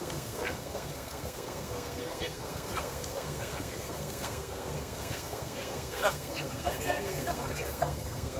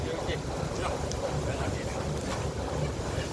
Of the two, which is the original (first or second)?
second